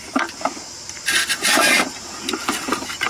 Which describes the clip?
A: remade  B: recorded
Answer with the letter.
B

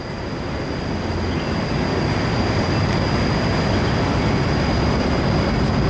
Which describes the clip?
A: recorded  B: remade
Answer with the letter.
A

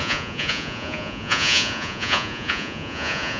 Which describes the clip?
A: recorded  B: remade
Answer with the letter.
B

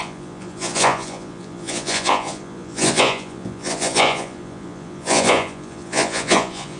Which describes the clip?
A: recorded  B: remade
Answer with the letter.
B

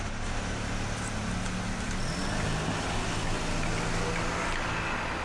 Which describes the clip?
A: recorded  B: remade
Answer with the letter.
A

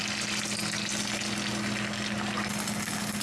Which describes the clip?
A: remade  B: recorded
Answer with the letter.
B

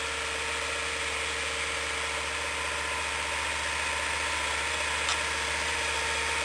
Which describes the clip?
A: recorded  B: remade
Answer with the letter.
A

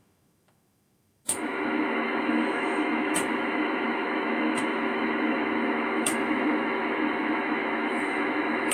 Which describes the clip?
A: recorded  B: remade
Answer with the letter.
B